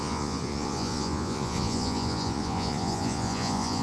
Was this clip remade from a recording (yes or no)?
yes